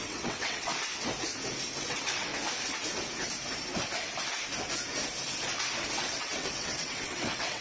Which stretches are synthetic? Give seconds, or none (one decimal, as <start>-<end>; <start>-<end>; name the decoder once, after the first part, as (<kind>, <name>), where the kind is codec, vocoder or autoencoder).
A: 0.0-0.7 (vocoder, WaveNeXt); 1.8-2.3; 6.0-7.6